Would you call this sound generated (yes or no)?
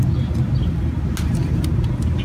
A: no